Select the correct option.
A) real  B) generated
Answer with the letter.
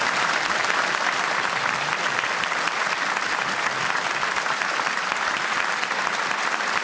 A